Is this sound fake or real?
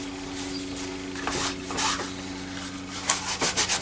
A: real